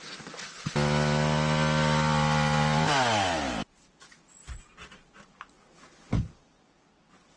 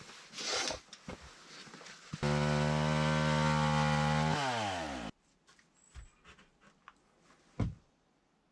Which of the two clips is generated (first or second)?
first